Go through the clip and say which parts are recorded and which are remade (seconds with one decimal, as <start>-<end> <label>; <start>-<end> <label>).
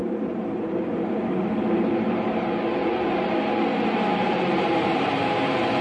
0.0-1.4 remade; 1.4-4.1 recorded; 4.1-5.2 remade; 5.2-5.8 recorded